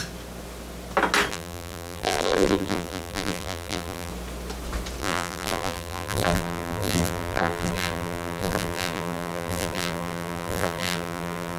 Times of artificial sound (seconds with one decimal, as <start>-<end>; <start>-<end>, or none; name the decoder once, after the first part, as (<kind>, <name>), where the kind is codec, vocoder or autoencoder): 1.3-4.1 (vocoder, BigVGAN v2); 5.0-11.6